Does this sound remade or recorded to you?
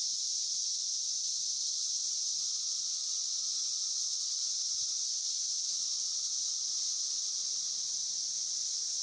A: recorded